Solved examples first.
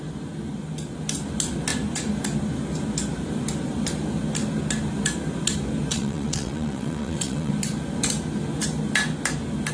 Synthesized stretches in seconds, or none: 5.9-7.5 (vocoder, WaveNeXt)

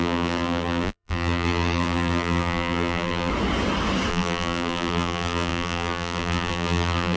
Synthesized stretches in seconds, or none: 0.0-3.3 (vocoder, BigVGAN v2); 4.1-7.2

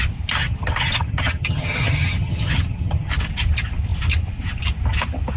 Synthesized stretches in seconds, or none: 0.4-3.1 (vocoder, HiFi-GAN)

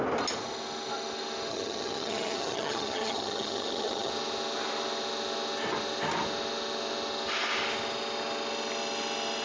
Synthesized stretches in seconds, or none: 1.5-4.1 (vocoder, HiFi-GAN)

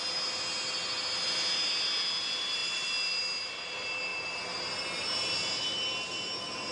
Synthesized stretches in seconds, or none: none

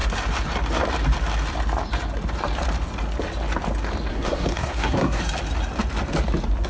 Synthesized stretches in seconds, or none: 4.1-5.2 (codec, SNAC)

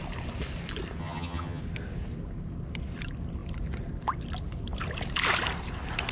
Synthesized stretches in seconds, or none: 1.0-1.6 (vocoder, HiFi-GAN)